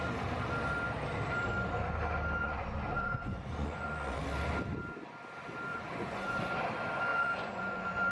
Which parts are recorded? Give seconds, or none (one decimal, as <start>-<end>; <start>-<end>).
0.0-2.4; 4.2-5.7; 6.4-7.1